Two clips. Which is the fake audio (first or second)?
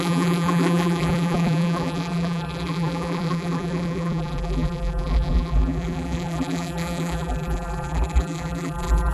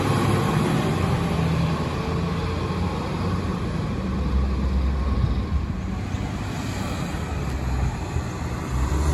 first